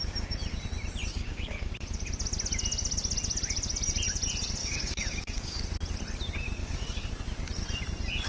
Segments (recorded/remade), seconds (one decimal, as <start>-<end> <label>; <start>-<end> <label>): 0.0-1.1 recorded; 1.1-1.7 remade; 1.7-4.6 recorded; 4.6-5.6 remade; 5.6-6.6 recorded; 6.6-7.1 remade; 7.1-8.3 recorded